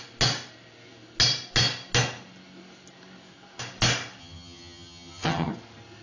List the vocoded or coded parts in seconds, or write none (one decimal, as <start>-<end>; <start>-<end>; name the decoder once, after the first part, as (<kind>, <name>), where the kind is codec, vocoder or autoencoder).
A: 4.2-5.5 (vocoder, HiFi-GAN)